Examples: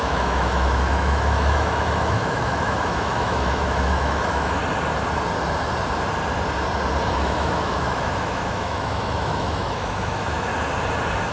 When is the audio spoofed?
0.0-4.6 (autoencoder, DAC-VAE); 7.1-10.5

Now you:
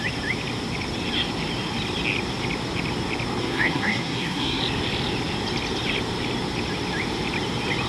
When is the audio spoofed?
3.4-4.6 (codec, SNAC)